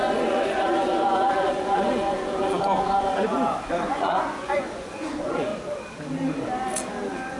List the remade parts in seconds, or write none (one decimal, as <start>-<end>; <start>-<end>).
0.0-5.5; 6.9-7.4